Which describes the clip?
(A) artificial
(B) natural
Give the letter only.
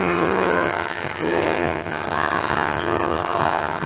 A